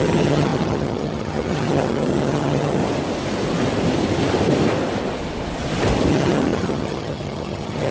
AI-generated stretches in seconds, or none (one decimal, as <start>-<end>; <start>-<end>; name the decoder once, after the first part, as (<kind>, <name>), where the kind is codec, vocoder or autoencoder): 0.0-2.8 (vocoder, HiFi-GAN); 6.1-7.9